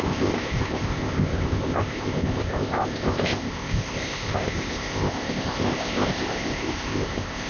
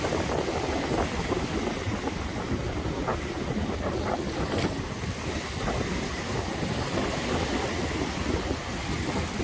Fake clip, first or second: first